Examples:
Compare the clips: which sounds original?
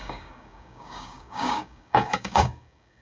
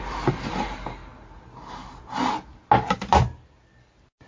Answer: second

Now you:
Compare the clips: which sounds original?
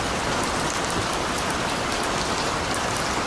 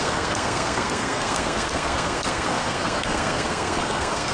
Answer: first